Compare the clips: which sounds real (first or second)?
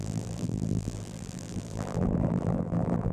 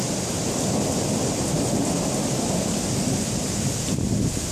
second